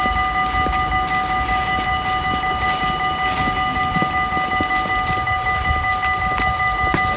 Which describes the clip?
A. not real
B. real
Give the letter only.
B